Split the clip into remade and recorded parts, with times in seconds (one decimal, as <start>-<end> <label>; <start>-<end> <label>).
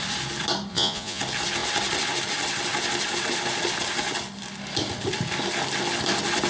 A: 0.0-0.7 recorded; 0.7-1.2 remade; 1.2-6.5 recorded